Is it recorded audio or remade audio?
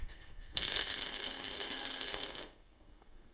remade